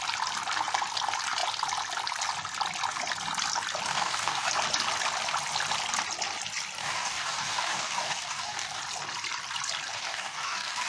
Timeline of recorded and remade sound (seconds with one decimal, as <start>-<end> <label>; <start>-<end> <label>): 0.0-3.9 recorded; 3.9-4.5 remade; 4.5-6.8 recorded; 6.8-8.8 remade; 8.8-9.9 recorded; 9.9-10.9 remade